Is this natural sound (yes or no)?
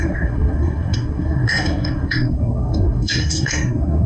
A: no